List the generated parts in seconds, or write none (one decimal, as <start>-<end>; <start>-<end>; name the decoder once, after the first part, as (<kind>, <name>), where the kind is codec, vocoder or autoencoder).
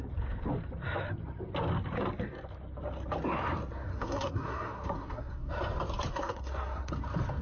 3.9-5.5 (codec, SNAC); 6.1-6.9